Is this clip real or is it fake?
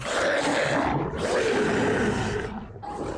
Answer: real